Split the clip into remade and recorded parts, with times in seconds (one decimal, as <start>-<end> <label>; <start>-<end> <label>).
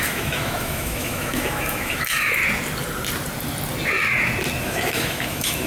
0.0-2.4 remade; 2.4-4.6 recorded; 4.6-5.7 remade